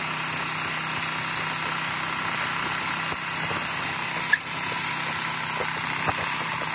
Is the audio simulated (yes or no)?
no